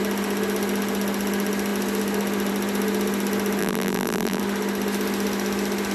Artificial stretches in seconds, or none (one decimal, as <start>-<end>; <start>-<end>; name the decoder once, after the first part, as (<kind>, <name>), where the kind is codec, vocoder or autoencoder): 3.6-4.4 (vocoder, BigVGAN v2)